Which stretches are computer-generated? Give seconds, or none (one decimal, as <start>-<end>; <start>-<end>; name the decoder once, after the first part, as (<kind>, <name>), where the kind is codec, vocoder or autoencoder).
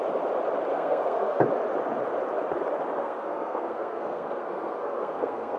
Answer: 0.7-1.4 (codec, SNAC); 3.0-5.6